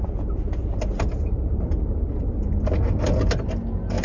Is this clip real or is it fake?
real